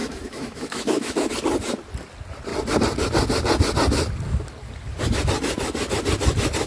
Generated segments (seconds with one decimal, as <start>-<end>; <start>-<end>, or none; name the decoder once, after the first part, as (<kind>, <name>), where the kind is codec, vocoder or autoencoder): 0.0-1.3 (autoencoder, DAC-VAE)